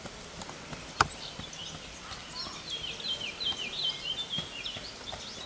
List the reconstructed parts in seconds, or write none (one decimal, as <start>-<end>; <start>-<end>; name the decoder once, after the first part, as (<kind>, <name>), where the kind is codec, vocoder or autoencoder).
none